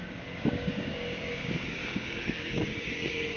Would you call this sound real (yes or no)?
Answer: no